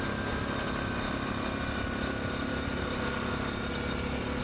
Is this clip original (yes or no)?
yes